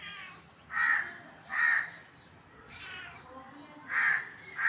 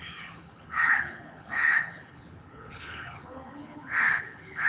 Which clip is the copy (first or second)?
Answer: second